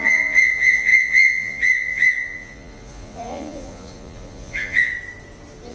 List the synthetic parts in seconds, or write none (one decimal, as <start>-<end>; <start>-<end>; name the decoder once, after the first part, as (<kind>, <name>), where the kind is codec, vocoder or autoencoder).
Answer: 0.0-4.9 (vocoder, Vocos)

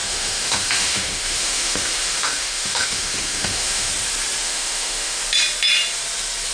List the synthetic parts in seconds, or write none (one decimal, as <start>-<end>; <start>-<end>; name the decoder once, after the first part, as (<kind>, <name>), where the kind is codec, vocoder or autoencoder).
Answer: 0.0-3.9 (autoencoder, DAC-VAE); 4.4-5.2

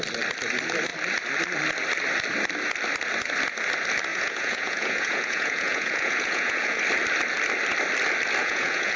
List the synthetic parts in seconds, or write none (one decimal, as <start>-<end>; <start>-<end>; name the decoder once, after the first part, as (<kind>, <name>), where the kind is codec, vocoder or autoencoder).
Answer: 4.1-6.8 (vocoder, Vocos); 8.4-9.0

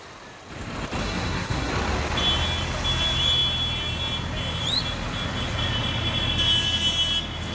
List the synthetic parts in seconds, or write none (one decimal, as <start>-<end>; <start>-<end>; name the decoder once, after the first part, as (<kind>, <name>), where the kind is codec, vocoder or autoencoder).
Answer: 1.0-1.7 (codec, SNAC)

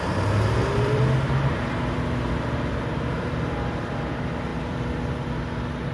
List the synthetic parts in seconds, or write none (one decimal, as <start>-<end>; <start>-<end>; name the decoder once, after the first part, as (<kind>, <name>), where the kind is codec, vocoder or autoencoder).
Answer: 0.6-4.1 (vocoder, BigVGAN v2); 4.5-5.3

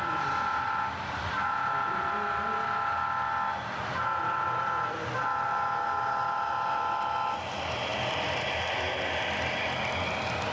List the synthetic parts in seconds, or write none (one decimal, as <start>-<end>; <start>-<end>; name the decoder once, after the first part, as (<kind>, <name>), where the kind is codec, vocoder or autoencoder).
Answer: none

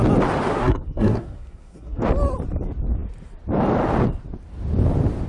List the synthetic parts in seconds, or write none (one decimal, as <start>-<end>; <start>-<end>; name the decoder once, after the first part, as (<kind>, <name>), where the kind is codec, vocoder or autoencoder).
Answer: 0.5-2.0 (codec, SNAC)

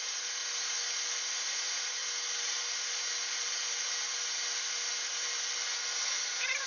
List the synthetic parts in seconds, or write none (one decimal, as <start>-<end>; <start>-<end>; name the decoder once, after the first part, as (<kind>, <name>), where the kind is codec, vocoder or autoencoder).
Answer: 0.0-0.4 (vocoder, Vocos); 1.3-2.0; 6.0-6.7